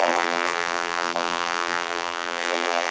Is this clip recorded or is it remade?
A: remade